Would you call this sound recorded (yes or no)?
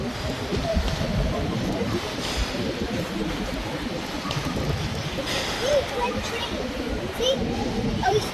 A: no